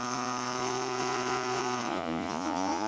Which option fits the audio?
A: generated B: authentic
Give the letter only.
A